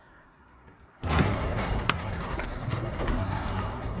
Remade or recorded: remade